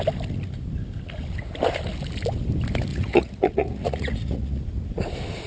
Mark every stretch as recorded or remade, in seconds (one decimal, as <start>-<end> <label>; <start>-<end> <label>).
0.0-2.9 recorded; 2.9-4.6 remade; 4.6-5.5 recorded